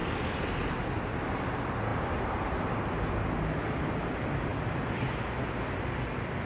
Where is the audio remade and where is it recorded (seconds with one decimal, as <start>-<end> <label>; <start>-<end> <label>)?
0.0-6.5 recorded